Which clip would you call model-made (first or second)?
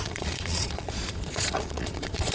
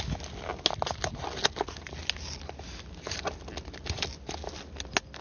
first